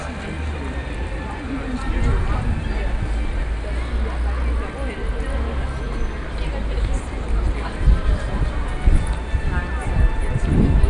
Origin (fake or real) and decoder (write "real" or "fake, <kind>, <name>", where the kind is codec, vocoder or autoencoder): real